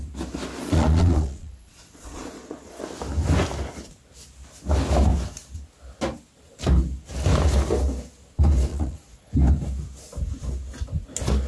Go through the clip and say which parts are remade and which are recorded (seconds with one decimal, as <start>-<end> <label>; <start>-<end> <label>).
0.0-0.6 recorded; 0.6-2.8 remade; 2.8-8.7 recorded; 8.7-9.3 remade; 9.3-11.5 recorded